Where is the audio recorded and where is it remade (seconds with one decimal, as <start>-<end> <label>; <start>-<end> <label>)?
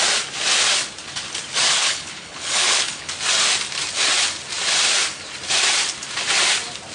0.0-1.8 recorded; 1.8-3.1 remade; 3.1-6.9 recorded